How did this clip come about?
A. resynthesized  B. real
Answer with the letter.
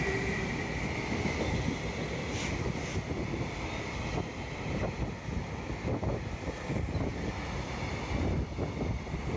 B